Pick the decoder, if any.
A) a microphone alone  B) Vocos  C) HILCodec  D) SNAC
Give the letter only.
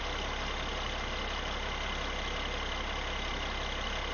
A